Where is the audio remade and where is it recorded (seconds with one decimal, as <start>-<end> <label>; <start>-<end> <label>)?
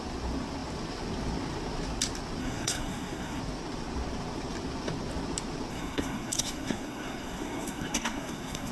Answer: 0.0-2.4 recorded; 2.4-3.4 remade; 3.4-5.7 recorded; 5.7-8.7 remade